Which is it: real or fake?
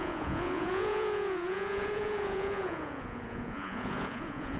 fake